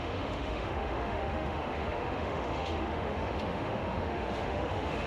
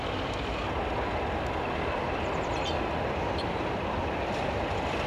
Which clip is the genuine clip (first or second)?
second